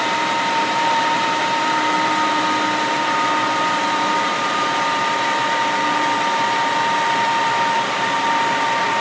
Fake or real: fake